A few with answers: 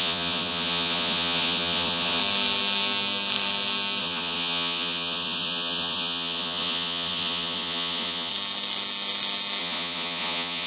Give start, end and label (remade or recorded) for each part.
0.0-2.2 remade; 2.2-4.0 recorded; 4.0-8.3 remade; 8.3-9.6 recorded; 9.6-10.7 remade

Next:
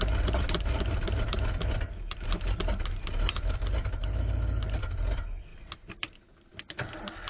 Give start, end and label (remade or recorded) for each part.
0.0-7.3 recorded

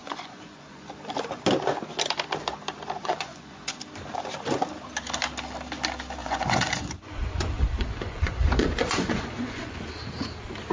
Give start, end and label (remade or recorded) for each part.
0.0-0.9 remade; 0.9-3.0 recorded; 3.0-3.8 remade; 3.8-6.2 recorded; 6.2-9.8 remade; 9.8-10.7 recorded

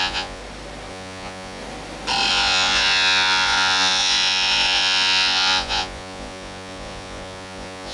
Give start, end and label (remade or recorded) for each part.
0.0-0.4 remade; 0.4-0.9 recorded; 0.9-1.6 remade; 1.6-2.3 recorded; 2.3-7.9 remade

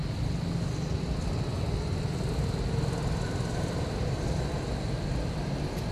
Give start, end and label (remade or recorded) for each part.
0.0-5.9 recorded